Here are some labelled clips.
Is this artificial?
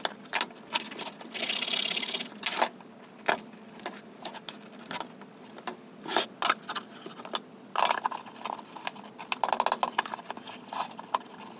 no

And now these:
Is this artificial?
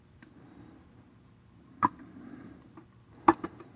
yes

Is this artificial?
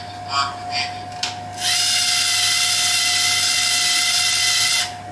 no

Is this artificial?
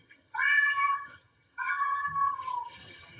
yes